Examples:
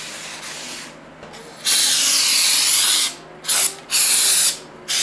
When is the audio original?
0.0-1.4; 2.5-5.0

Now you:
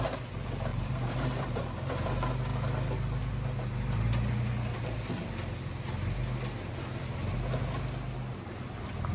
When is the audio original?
0.0-0.7; 1.6-9.1

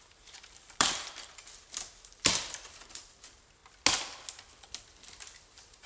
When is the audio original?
3.6-4.6

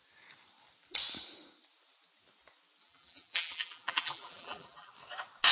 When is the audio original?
0.0-2.8; 4.9-5.5

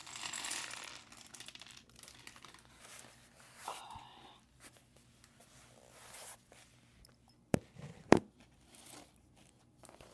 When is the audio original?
2.0-5.4; 9.1-10.1

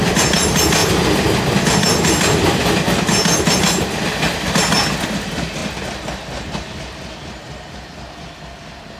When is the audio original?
0.0-9.0

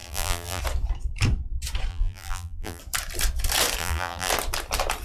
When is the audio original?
0.6-1.9; 2.8-3.8; 4.3-5.0